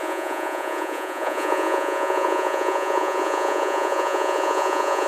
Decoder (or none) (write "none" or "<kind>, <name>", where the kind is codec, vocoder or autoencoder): vocoder, Vocos